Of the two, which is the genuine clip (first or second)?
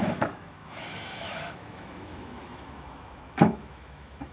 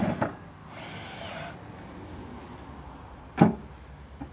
second